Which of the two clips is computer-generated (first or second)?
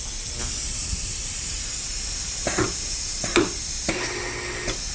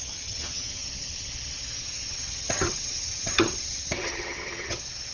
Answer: second